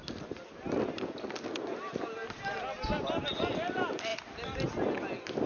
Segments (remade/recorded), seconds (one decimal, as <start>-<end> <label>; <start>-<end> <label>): 0.0-5.5 recorded